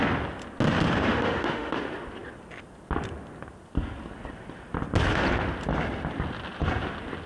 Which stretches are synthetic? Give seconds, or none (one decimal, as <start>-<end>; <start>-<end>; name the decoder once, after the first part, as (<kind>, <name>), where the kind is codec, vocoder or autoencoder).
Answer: 1.1-1.7 (autoencoder, DAC-VAE)